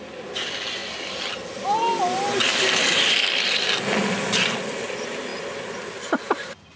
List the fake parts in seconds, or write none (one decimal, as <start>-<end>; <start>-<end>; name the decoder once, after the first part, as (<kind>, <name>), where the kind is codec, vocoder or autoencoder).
none